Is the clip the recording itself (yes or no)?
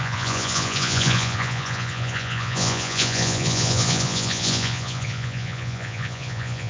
no